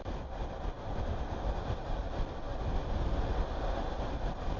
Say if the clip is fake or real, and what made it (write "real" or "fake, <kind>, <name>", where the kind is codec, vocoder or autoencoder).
real